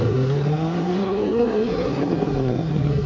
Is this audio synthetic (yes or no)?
yes